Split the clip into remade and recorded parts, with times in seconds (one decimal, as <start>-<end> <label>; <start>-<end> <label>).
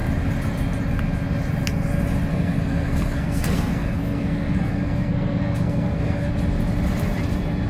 0.0-2.3 recorded; 2.3-6.3 remade; 6.3-7.7 recorded